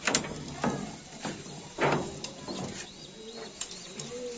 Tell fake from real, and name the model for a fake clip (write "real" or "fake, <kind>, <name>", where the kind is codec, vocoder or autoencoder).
real